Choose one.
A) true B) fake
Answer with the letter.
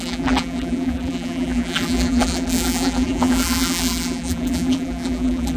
B